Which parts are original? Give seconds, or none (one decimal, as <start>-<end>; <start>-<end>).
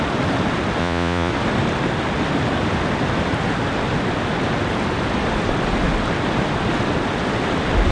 0.0-0.8; 1.3-7.9